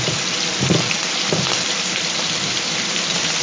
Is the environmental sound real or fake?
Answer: fake